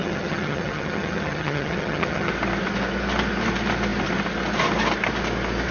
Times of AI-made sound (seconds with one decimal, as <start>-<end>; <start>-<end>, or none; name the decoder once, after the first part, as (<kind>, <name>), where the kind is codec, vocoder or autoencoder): 0.0-2.3 (vocoder, HiFi-GAN)